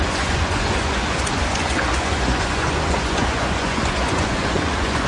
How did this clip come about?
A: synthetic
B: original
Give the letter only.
A